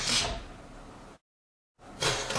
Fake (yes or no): no